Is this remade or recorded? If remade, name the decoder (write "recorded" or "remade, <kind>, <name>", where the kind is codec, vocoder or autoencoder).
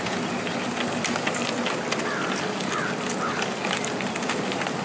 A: recorded